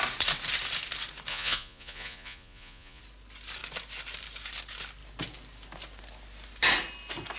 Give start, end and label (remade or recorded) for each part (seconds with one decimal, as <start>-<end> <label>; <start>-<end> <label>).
0.0-1.3 recorded; 1.3-3.0 remade; 3.0-7.4 recorded